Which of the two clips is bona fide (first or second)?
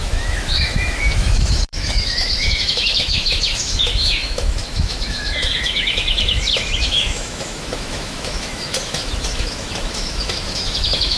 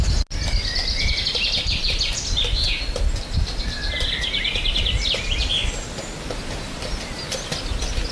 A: second